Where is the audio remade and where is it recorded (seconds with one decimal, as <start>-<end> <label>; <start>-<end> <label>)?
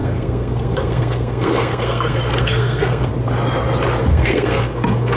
0.0-3.1 remade; 3.1-4.1 recorded; 4.1-5.2 remade